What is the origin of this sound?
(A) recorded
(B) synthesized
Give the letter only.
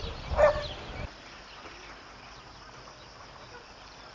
A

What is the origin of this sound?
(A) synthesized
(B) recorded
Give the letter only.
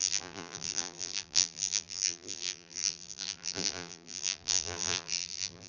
A